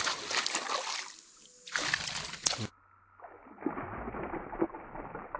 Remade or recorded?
recorded